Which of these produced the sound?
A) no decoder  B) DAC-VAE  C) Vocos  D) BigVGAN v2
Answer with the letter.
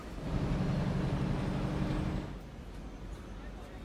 A